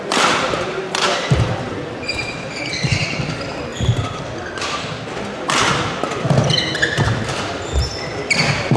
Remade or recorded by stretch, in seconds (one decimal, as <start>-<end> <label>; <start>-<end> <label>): 0.0-3.7 remade; 3.7-8.8 recorded